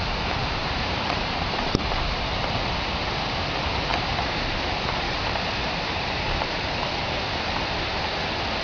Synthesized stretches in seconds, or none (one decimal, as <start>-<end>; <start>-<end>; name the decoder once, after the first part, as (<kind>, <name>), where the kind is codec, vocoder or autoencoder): 0.6-2.3 (vocoder, BigVGAN v2); 3.9-6.9